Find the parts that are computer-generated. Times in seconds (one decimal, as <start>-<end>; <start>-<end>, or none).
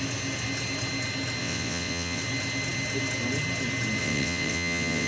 1.4-2.2; 4.0-5.1